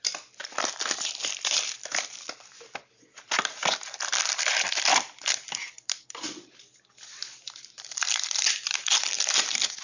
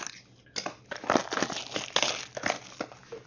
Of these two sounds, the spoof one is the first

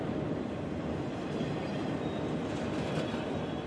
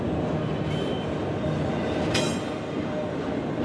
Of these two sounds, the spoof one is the first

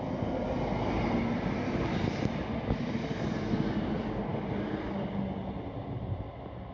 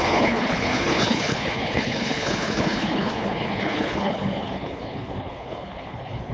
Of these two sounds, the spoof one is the second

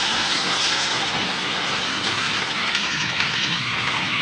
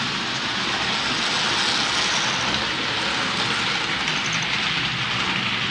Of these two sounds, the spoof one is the first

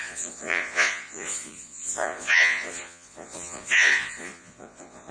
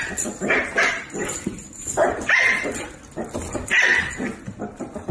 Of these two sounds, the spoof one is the first